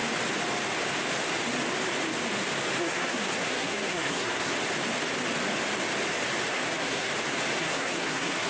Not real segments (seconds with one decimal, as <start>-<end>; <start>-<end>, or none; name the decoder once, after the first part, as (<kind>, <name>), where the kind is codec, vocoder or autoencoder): 2.8-4.5 (codec, SNAC); 6.5-7.1; 7.6-8.5